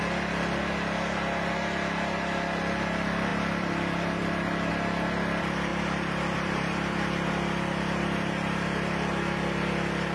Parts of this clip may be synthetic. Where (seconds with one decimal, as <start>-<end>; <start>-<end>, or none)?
3.3-4.7; 5.7-7.3